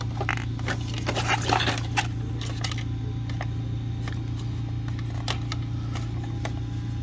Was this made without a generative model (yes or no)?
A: yes